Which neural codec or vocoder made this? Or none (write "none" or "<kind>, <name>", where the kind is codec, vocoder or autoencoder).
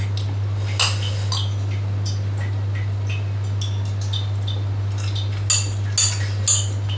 none